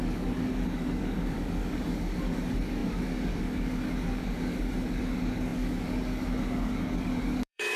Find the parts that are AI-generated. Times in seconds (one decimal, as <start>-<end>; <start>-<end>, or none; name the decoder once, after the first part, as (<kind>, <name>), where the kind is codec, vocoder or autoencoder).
0.0-7.8 (codec, DAC)